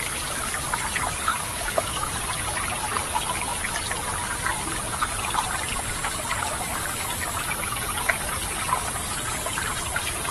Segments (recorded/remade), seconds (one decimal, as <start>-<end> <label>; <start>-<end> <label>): 0.0-1.3 recorded; 1.3-2.1 remade; 2.1-10.3 recorded